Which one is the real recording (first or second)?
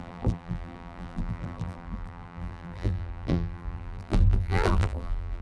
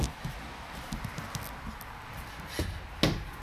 second